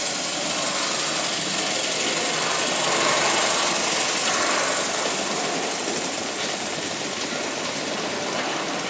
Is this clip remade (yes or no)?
no